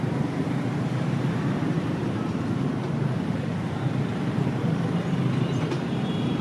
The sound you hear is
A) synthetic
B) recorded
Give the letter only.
A